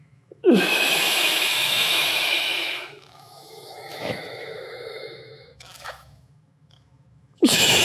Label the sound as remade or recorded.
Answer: remade